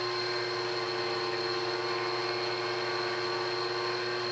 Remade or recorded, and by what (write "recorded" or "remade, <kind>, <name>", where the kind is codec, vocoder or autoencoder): recorded